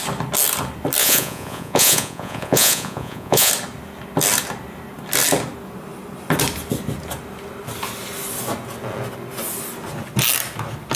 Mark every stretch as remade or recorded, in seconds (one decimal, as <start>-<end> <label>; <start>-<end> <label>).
0.0-1.0 recorded; 1.0-3.5 remade; 3.5-11.0 recorded